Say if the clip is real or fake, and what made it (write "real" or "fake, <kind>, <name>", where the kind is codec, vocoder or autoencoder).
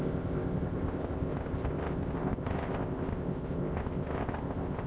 fake, codec, ZipCodec